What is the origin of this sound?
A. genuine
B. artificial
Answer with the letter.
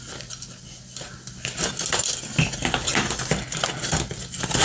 A